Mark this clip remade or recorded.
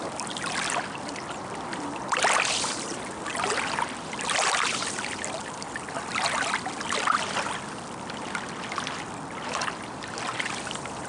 recorded